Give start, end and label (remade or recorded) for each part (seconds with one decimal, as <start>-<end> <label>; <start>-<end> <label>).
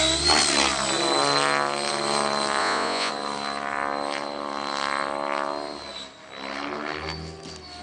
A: 0.0-2.6 recorded; 2.6-3.1 remade; 3.1-7.8 recorded